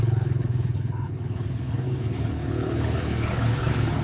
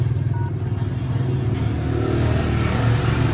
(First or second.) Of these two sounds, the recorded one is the second